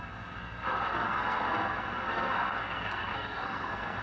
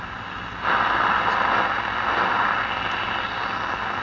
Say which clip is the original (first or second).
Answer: second